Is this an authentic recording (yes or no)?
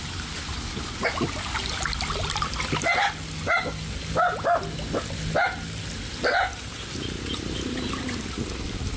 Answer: yes